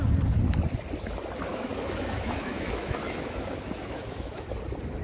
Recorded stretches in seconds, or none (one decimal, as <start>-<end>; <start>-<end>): 0.0-1.5; 4.5-5.0